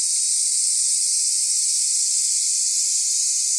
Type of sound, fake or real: fake